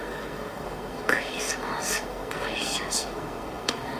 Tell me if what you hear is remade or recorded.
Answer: remade